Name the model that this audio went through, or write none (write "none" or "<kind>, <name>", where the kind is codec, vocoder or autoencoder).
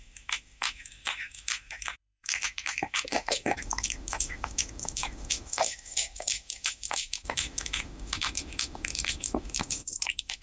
autoencoder, DAC-VAE